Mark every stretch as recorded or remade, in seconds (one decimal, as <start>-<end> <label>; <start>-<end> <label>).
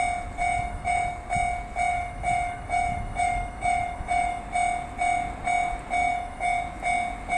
0.0-0.4 recorded; 0.4-1.1 remade; 1.1-1.9 recorded; 1.9-4.4 remade; 4.4-6.0 recorded; 6.0-6.6 remade; 6.6-7.4 recorded